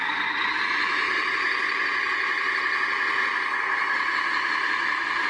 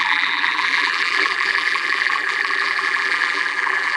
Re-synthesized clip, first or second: second